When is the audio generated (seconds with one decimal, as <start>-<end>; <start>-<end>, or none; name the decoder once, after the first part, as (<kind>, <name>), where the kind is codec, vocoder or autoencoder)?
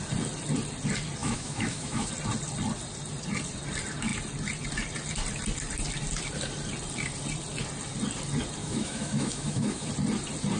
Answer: 1.2-2.1 (autoencoder, DAC-VAE); 8.6-9.9